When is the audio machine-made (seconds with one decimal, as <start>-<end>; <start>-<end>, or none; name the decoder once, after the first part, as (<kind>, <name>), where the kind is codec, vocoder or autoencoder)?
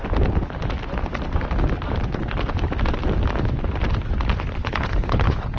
4.6-5.6 (codec, HILCodec)